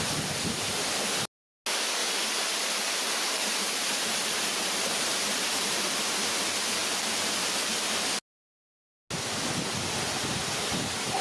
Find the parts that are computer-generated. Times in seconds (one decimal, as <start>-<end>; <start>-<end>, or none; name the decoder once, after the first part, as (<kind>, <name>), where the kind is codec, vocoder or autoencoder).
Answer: 2.0-5.9 (vocoder, BigVGAN v2)